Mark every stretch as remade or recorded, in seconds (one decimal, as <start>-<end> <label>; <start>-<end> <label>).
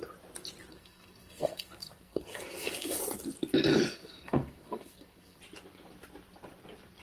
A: 0.0-0.7 recorded; 0.7-3.0 remade; 3.0-3.9 recorded; 3.9-5.4 remade; 5.4-7.0 recorded